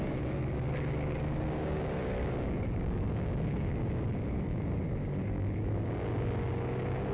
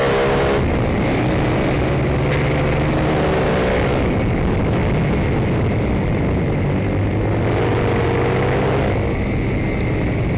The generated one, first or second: first